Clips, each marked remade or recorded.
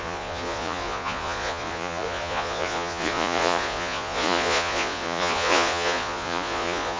remade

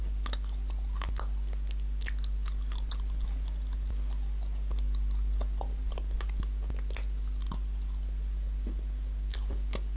recorded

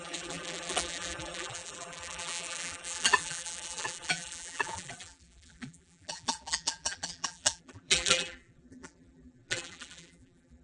remade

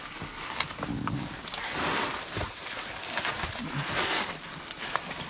recorded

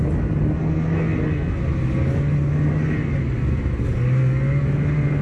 recorded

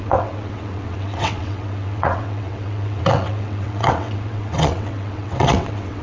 remade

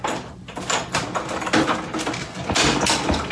recorded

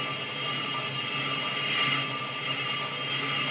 recorded